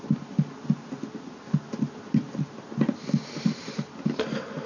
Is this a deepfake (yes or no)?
no